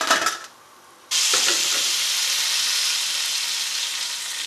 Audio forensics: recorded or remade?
recorded